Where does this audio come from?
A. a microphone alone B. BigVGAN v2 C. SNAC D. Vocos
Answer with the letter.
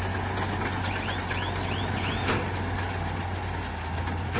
A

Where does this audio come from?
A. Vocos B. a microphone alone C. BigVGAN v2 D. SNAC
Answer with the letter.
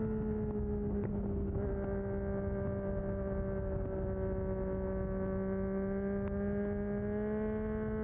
B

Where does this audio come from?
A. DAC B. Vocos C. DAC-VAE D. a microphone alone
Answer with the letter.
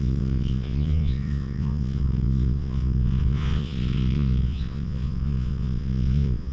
B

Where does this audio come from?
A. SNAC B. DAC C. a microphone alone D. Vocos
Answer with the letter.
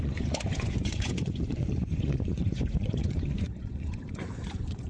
D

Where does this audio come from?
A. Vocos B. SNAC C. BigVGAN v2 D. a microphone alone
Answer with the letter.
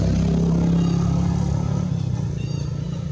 D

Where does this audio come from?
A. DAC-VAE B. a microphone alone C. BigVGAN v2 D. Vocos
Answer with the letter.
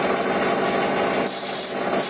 B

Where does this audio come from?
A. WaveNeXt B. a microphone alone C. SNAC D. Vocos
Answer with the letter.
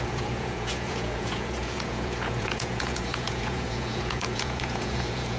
D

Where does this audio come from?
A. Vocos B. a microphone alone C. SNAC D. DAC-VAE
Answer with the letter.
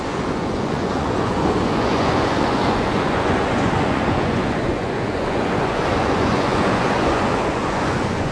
A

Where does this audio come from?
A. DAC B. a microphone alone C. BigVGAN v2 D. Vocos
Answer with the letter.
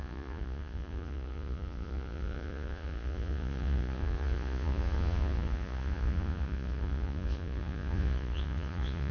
D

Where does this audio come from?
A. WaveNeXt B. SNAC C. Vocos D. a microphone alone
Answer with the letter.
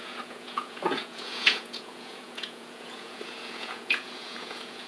C